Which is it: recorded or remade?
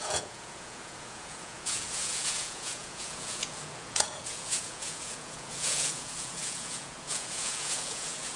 remade